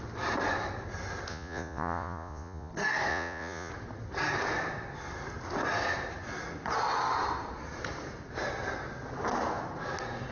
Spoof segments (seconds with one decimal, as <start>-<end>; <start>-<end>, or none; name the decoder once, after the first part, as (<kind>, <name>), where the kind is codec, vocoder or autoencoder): 1.3-2.7 (vocoder, Vocos); 3.1-3.7